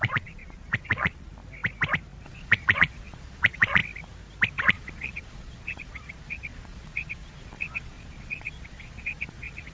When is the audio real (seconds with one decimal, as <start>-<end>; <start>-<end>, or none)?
1.3-2.2; 3.8-4.6